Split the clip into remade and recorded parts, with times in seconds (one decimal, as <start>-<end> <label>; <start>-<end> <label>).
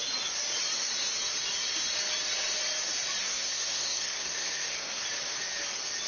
0.0-3.2 recorded; 3.2-5.0 remade; 5.0-6.1 recorded